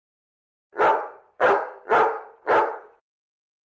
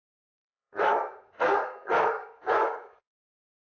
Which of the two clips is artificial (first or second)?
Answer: second